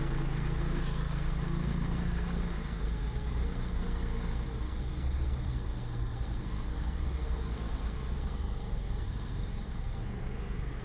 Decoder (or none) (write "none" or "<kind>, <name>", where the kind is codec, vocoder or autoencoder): codec, SNAC